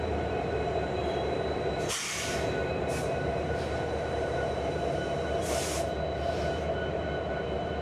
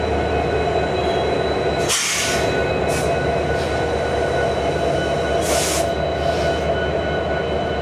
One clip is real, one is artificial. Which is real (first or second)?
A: second